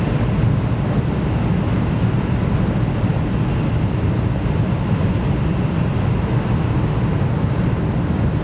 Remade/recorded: recorded